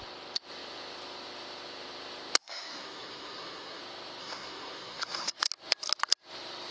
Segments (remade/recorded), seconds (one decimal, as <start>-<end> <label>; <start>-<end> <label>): 0.0-2.4 recorded; 2.4-3.8 remade; 3.8-4.2 recorded; 4.2-5.4 remade; 5.4-6.7 recorded